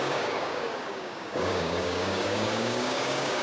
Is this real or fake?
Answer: fake